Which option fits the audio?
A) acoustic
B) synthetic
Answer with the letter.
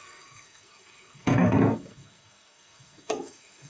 B